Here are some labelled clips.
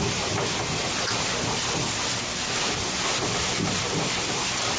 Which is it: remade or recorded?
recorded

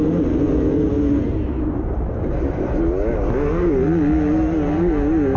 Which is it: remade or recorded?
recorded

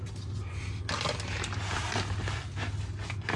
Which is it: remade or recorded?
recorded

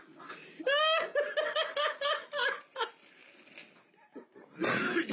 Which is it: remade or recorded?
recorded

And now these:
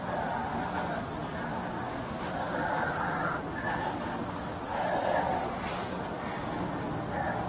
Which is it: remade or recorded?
recorded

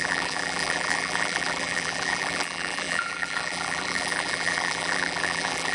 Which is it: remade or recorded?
remade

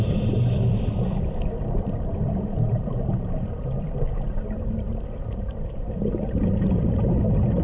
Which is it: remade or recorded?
recorded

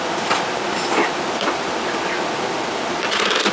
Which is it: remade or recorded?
recorded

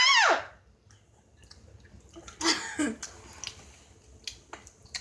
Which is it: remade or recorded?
recorded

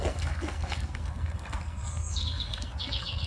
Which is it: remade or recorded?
remade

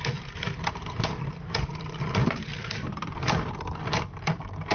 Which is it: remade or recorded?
remade